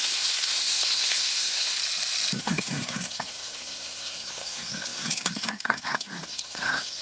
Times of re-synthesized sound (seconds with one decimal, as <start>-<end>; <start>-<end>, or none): 0.0-1.8; 2.4-7.0